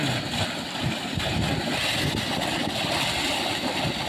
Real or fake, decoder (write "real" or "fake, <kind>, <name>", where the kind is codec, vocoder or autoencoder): real